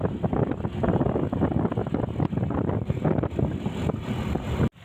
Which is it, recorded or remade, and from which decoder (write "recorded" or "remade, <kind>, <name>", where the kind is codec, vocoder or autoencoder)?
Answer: recorded